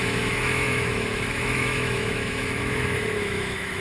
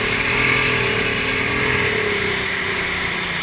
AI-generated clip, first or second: first